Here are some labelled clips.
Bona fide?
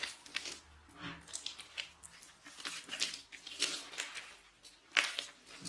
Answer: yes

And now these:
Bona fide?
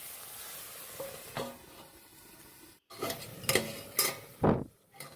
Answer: yes